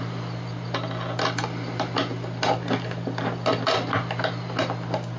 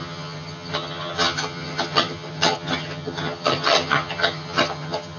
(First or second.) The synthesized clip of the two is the second